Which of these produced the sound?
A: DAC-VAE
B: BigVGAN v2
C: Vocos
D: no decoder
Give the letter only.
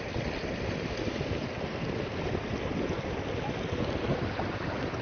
D